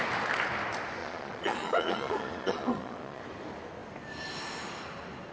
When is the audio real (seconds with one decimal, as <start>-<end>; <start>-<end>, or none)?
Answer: 0.0-1.0; 3.2-5.3